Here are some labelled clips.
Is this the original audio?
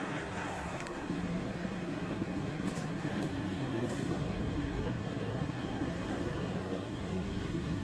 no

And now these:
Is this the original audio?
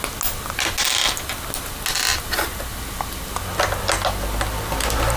yes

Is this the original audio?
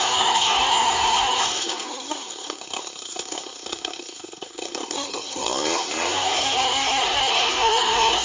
no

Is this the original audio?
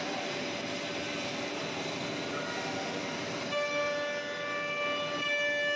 yes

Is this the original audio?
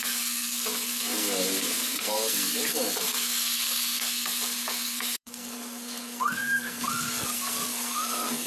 no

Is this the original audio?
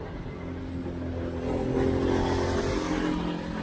yes